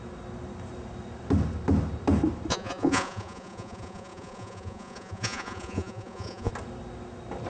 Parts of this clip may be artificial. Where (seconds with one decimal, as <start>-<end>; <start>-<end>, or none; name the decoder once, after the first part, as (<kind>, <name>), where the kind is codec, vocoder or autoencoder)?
2.5-6.5 (vocoder, Vocos)